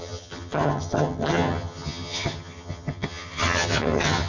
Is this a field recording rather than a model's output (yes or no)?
no